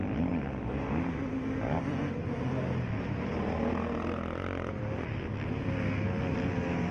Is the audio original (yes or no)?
yes